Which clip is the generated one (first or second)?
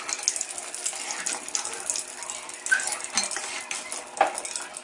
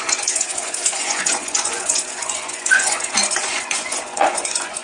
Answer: second